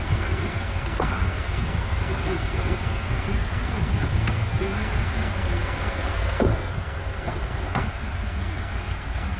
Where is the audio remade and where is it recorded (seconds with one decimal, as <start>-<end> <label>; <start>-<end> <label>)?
0.0-9.4 remade